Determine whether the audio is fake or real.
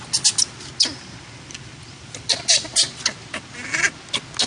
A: real